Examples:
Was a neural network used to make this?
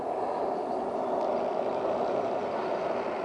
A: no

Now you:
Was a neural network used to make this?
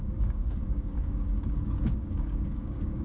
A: yes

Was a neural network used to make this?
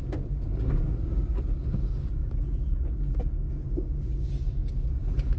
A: yes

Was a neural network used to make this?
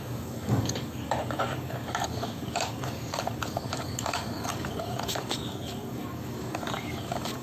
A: yes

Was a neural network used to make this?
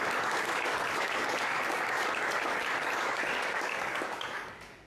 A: yes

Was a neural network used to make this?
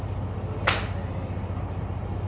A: no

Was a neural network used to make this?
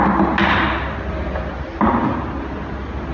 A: no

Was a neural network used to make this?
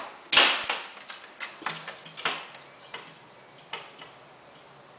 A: no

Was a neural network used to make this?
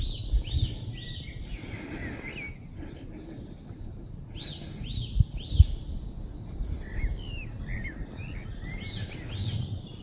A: no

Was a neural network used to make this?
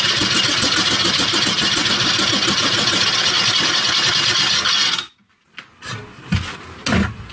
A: no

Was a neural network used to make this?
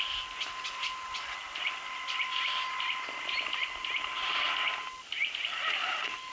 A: no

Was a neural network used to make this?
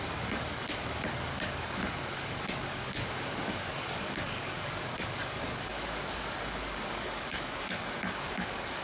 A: yes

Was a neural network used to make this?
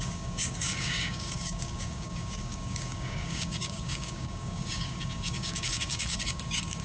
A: yes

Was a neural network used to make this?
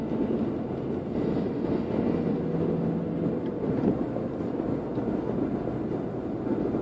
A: no